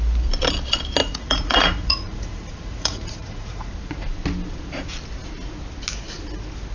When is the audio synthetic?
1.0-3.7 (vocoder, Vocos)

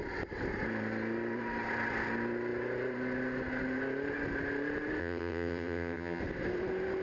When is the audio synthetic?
5.0-6.2 (vocoder, HiFi-GAN)

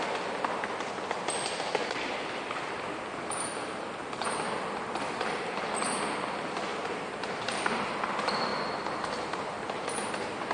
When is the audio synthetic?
6.7-7.6 (vocoder, BigVGAN v2)

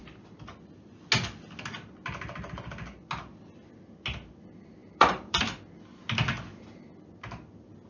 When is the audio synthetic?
4.8-5.4 (vocoder, BigVGAN v2)

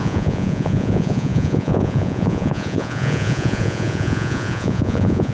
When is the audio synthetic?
0.0-5.3 (vocoder, Vocos)

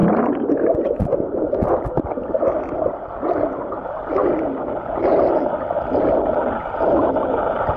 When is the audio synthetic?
none

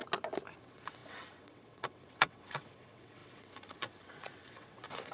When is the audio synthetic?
0.6-5.1 (vocoder, WaveNeXt)

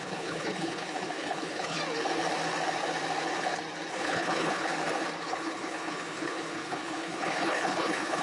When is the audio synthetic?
0.0-1.8 (codec, HILCodec); 3.9-4.7; 5.3-8.2